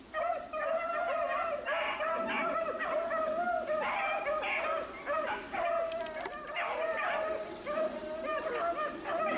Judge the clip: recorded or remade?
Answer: recorded